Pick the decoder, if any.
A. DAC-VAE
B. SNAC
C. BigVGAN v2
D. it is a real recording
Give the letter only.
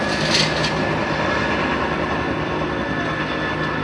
D